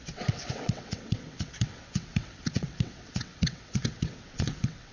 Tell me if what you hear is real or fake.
fake